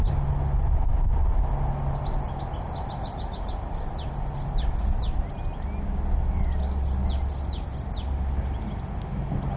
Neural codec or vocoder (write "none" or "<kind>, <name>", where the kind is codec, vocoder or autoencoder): none